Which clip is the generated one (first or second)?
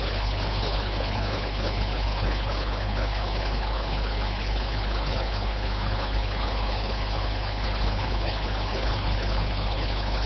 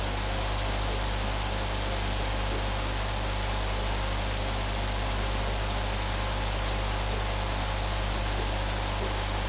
first